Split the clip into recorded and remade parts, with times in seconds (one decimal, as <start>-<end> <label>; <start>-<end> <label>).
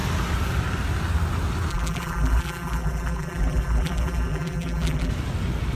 0.0-1.7 recorded; 1.7-5.1 remade; 5.1-5.7 recorded